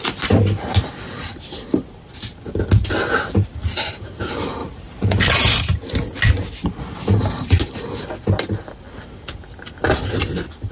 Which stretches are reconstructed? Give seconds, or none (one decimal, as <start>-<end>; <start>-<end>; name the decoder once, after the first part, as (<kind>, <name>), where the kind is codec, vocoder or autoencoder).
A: 4.6-5.3 (vocoder, BigVGAN v2)